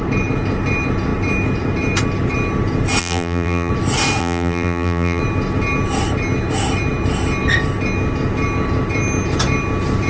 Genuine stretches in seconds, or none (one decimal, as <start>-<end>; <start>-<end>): 0.0-3.0; 3.7-4.2; 5.2-10.1

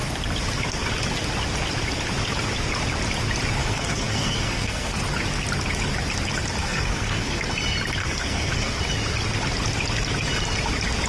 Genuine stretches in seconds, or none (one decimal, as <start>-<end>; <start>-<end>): 0.0-3.6; 5.0-6.6; 7.4-8.0; 8.8-11.1

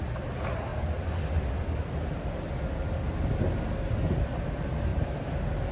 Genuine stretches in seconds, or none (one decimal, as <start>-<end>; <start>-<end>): 0.0-5.7

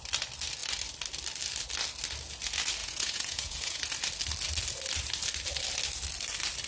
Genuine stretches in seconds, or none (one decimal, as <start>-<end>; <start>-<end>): 0.0-2.8; 3.8-6.7